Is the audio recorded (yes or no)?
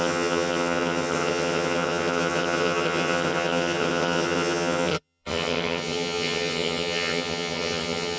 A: no